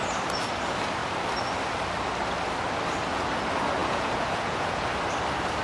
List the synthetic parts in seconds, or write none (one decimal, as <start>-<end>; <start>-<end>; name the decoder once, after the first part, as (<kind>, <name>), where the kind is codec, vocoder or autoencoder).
3.8-4.9 (vocoder, Vocos)